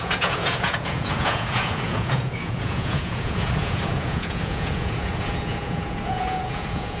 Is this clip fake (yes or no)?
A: yes